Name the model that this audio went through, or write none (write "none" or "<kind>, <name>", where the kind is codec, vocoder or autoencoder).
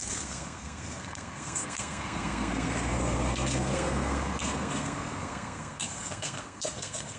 codec, SNAC